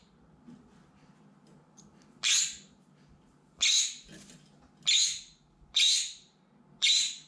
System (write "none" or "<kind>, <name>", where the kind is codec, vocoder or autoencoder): none